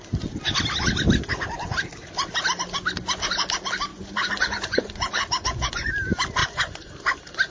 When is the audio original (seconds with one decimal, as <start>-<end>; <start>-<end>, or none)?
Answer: 0.0-3.9; 5.9-6.4; 6.9-7.5

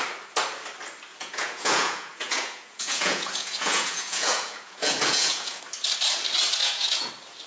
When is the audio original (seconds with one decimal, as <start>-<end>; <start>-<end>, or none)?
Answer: 0.0-1.1; 5.6-6.6; 7.1-7.5

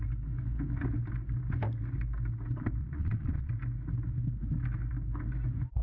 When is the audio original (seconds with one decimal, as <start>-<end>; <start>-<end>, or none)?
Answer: 0.0-2.8; 3.5-5.8

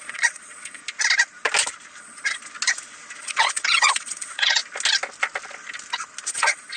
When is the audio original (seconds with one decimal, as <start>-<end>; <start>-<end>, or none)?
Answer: 0.8-2.0; 2.4-3.2; 4.6-6.3

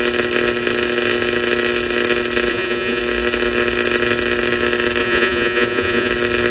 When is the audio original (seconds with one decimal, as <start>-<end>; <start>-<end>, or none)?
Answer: 0.0-2.5; 3.0-5.0; 6.1-6.5

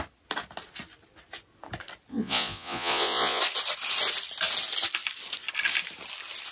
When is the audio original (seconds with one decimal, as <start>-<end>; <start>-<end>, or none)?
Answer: 0.0-2.1; 3.4-6.5

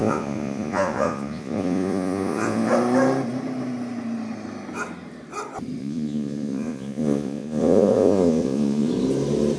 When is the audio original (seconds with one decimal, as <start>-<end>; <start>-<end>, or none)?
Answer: 2.7-5.8; 8.9-9.6

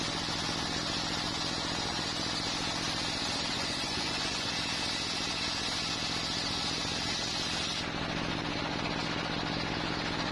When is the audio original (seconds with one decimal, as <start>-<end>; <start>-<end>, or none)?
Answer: 0.0-3.5; 4.5-10.3